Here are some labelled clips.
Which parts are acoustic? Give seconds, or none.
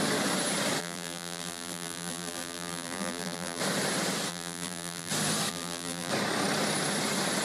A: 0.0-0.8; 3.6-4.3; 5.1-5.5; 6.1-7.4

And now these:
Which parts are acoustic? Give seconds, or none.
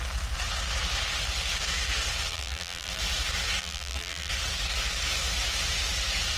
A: 0.0-2.3; 3.0-3.6; 4.3-6.4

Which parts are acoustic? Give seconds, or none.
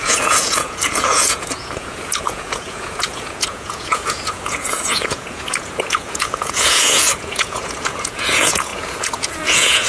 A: none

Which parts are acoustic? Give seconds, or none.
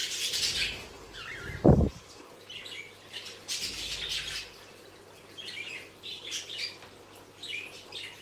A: 0.0-8.2